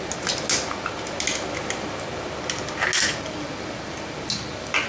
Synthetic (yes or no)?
no